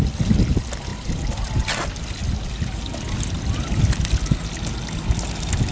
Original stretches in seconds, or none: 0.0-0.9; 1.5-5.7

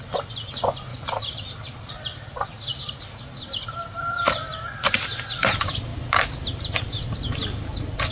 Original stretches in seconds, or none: 0.0-0.9; 1.9-8.1

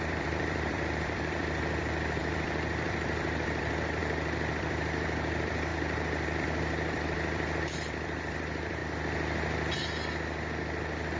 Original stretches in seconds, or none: 4.0-4.6; 5.7-6.4; 8.8-11.2